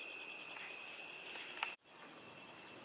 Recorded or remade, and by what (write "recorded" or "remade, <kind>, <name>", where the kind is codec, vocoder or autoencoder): recorded